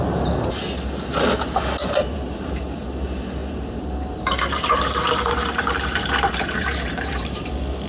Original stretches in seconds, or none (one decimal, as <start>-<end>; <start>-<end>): 0.0-2.1; 2.8-3.4; 7.5-7.9